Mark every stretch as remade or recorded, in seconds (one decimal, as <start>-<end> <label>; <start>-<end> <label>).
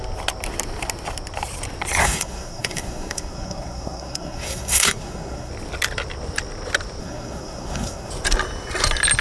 0.0-2.0 recorded; 2.0-5.5 remade; 5.5-7.0 recorded; 7.0-8.1 remade; 8.1-9.2 recorded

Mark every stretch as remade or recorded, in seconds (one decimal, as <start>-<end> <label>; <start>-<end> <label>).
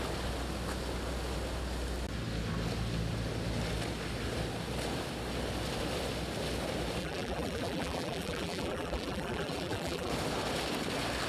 0.0-7.0 recorded; 7.0-10.1 remade; 10.1-11.3 recorded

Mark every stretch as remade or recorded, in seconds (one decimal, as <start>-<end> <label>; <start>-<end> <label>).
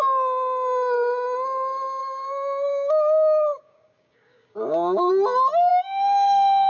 0.0-2.0 recorded; 2.0-5.1 remade; 5.1-5.7 recorded; 5.7-6.7 remade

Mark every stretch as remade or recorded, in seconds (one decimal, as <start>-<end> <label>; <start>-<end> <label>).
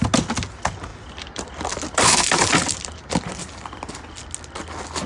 0.0-0.9 recorded; 0.9-3.3 remade; 3.3-5.1 recorded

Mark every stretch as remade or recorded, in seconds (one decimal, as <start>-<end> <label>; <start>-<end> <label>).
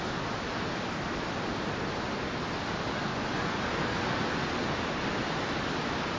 0.0-3.1 recorded; 3.1-3.6 remade; 3.6-6.2 recorded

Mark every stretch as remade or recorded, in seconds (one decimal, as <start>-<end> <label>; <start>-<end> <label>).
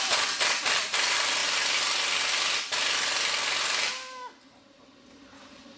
0.0-1.4 remade; 1.4-4.4 recorded; 4.4-5.8 remade